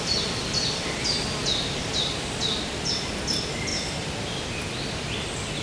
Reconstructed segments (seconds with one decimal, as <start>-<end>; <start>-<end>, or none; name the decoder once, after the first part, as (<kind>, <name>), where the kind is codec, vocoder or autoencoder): 3.7-4.5 (vocoder, BigVGAN v2)